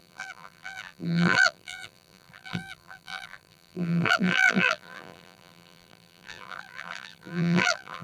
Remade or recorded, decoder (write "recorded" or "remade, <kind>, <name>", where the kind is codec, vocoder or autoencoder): remade, vocoder, BigVGAN v2